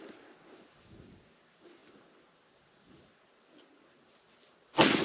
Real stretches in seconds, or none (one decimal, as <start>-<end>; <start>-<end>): 0.0-5.0